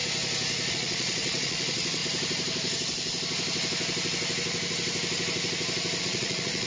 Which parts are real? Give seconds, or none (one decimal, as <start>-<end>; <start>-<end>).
0.0-0.7; 2.0-6.0